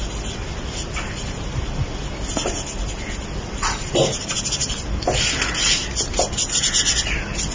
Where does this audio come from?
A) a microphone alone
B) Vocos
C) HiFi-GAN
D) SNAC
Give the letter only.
A